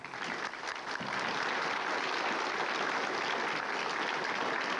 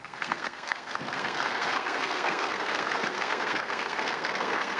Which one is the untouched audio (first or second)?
first